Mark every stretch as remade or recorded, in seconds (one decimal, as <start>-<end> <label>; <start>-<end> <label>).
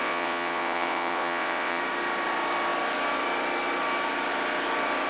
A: 0.0-1.8 remade; 1.8-5.1 recorded